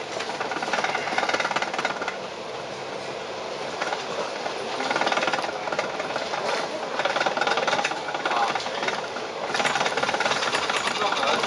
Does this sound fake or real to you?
real